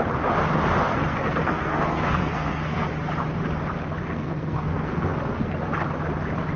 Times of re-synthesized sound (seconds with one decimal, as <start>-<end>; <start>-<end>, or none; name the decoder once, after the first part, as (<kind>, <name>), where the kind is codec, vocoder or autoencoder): 0.9-2.9 (codec, SNAC); 4.0-5.5